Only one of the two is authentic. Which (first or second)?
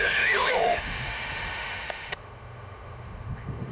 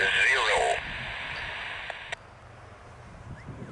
second